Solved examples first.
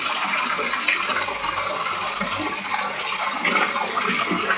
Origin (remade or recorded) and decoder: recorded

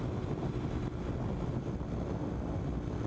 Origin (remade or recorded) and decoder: recorded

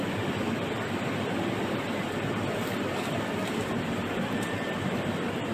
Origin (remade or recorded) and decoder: recorded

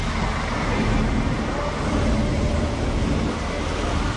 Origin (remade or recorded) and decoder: recorded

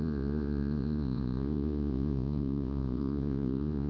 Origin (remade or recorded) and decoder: remade, vocoder, Vocos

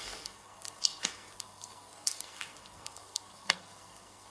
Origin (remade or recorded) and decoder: remade, codec, SNAC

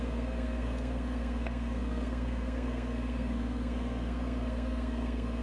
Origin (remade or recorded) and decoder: remade, codec, SNAC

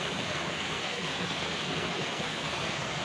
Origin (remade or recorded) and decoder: remade, codec, SNAC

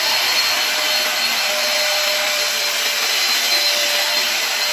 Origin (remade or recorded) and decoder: recorded